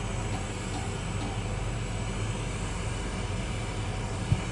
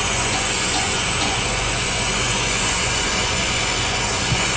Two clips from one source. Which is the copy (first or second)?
second